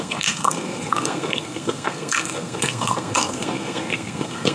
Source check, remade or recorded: remade